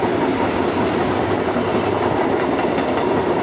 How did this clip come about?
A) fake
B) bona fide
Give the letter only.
B